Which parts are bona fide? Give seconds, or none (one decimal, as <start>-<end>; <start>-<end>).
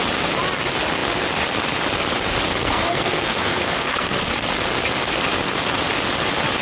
0.0-2.6; 4.5-6.6